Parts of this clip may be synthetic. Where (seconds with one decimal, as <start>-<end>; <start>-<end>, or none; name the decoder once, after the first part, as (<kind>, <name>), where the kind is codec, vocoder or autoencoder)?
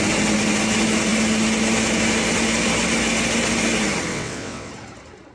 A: 4.1-4.7 (vocoder, WaveNeXt)